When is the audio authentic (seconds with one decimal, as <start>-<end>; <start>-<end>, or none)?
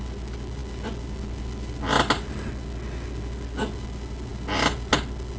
0.0-5.4